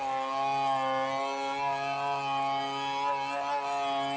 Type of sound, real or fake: real